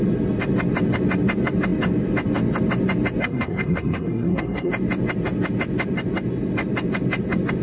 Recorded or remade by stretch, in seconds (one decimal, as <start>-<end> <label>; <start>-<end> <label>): 0.0-3.2 recorded; 3.2-4.7 remade; 4.7-7.6 recorded